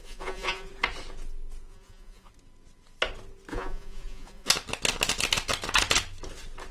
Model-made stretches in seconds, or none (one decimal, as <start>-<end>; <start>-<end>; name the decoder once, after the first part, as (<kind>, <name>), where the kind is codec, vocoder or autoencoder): 0.0-0.7 (vocoder, Vocos); 1.7-2.3; 3.5-4.5